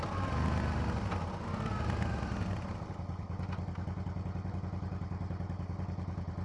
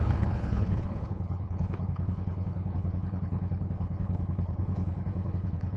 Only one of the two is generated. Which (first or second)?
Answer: second